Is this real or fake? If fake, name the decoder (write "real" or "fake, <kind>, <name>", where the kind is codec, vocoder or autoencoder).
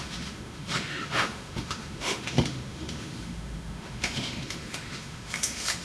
fake, autoencoder, DAC-VAE